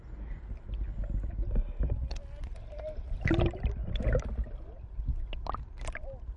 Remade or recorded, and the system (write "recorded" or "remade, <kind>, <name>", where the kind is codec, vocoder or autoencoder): recorded